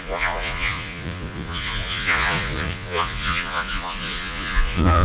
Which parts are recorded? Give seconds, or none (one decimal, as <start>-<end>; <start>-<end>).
none